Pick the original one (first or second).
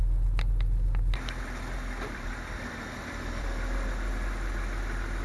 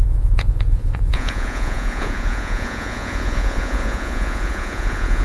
first